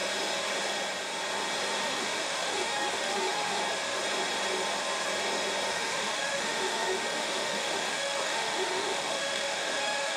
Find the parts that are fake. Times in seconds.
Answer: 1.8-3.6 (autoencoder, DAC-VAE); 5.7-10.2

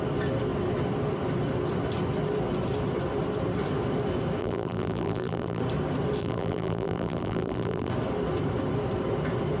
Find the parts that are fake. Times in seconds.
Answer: 4.4-5.6 (vocoder, BigVGAN v2); 6.2-7.9

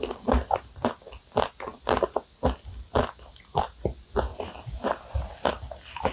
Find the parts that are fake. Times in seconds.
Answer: none

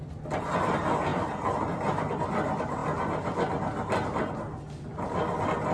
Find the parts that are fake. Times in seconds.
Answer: none

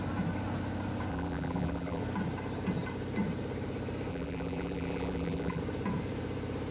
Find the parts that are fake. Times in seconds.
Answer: 1.1-2.0 (vocoder, BigVGAN v2); 4.1-5.6

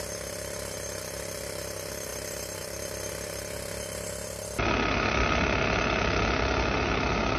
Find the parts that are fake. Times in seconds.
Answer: none

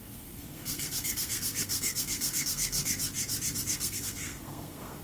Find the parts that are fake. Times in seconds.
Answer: 0.0-3.0 (codec, SNAC); 3.7-5.0

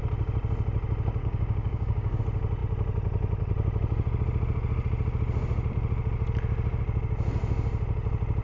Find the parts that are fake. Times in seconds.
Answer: 1.2-2.2 (codec, DAC)